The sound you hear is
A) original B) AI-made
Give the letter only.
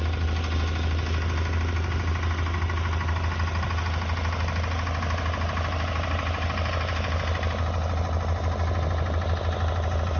A